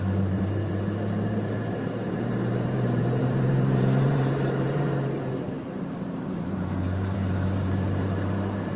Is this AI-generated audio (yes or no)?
yes